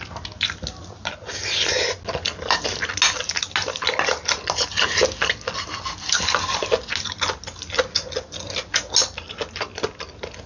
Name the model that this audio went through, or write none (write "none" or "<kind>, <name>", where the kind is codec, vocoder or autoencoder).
none